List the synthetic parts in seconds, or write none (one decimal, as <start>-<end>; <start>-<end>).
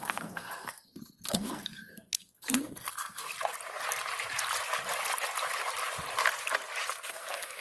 0.0-3.3; 7.1-7.6